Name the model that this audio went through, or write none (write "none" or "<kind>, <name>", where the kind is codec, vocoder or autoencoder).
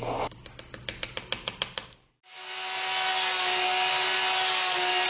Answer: none